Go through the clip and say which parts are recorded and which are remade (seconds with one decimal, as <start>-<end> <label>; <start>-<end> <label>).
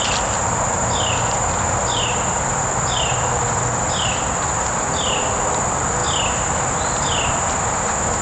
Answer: 0.0-8.2 recorded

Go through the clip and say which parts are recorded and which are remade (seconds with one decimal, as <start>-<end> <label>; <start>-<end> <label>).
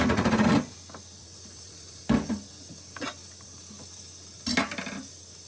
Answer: 0.0-0.5 remade; 0.5-1.2 recorded; 1.2-2.0 remade; 2.0-5.5 recorded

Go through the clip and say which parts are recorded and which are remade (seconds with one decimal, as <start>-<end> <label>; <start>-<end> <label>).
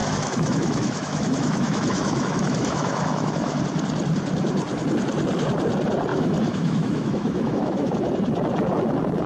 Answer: 0.0-3.6 remade; 3.6-6.1 recorded; 6.1-7.9 remade; 7.9-9.3 recorded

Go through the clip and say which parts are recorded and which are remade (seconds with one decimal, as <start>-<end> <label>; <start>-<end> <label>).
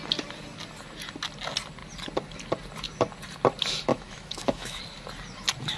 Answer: 0.0-3.9 recorded; 3.9-4.8 remade; 4.8-5.8 recorded